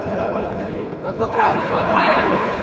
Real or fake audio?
fake